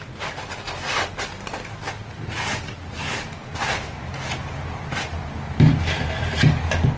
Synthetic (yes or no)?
no